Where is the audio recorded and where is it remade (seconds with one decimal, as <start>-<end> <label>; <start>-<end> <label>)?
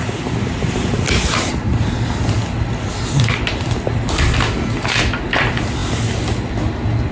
0.0-7.1 recorded